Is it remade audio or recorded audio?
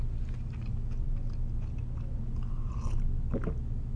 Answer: recorded